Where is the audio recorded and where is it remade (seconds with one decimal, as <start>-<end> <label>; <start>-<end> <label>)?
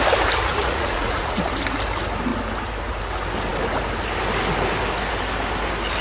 0.0-0.5 recorded; 0.5-1.5 remade; 1.5-6.0 recorded